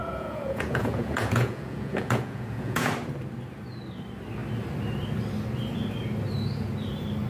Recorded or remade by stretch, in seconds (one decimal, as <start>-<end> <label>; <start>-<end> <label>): 0.0-2.9 remade; 2.9-7.3 recorded